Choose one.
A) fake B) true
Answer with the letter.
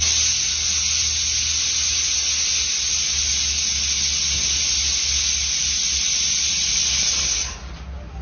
B